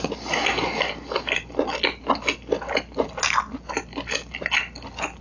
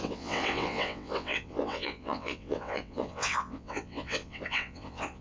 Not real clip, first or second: second